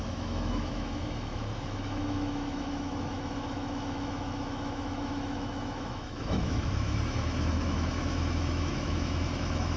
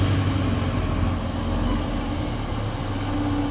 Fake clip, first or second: first